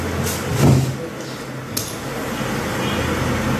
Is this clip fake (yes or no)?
no